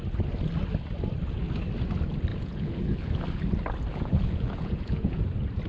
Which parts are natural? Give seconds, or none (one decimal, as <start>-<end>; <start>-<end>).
0.0-2.3; 3.2-3.9; 5.2-5.7